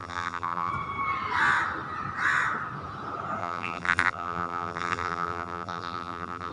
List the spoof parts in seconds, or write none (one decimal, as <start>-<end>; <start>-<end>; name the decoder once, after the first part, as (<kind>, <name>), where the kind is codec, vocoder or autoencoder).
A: 0.0-0.7 (vocoder, BigVGAN v2); 3.4-6.5